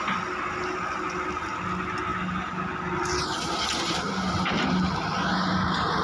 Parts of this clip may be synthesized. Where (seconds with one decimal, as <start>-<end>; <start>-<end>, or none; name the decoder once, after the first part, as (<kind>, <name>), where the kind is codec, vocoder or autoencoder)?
none